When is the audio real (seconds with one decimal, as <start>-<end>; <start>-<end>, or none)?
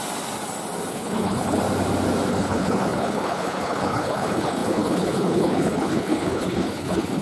0.0-0.9; 1.6-2.3